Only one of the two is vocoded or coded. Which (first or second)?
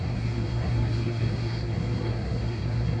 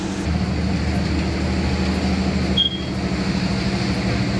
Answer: first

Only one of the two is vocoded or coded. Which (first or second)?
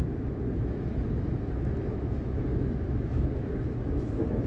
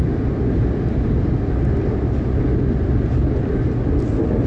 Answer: first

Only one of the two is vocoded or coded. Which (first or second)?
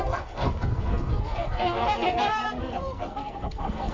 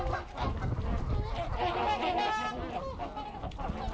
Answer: first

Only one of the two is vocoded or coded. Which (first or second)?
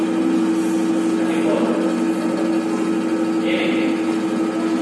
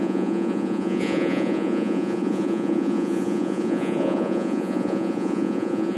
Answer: second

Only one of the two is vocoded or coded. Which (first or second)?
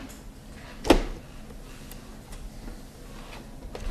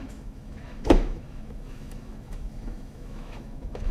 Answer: second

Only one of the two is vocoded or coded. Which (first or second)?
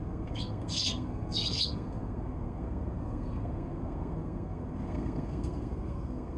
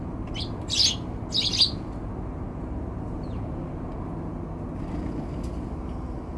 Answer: first